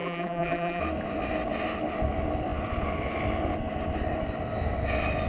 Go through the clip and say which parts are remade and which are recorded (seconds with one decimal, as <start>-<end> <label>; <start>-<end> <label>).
0.0-0.8 remade; 0.8-5.3 recorded